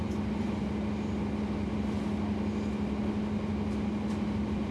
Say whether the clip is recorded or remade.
recorded